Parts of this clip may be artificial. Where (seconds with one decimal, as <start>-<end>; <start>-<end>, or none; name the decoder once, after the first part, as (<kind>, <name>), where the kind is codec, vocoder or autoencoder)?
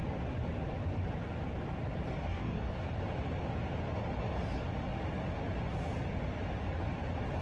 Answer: 2.2-3.0 (codec, DAC)